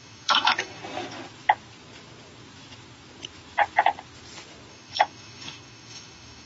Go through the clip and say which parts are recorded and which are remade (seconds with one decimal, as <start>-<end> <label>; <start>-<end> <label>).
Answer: 0.0-0.8 remade; 0.8-4.7 recorded; 4.7-6.5 remade

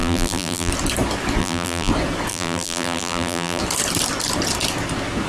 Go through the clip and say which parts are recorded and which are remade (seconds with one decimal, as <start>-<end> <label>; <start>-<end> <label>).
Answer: 0.0-0.7 remade; 0.7-1.4 recorded; 1.4-1.9 remade; 1.9-2.3 recorded; 2.3-3.6 remade; 3.6-5.3 recorded